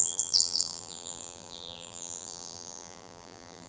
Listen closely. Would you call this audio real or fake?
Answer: fake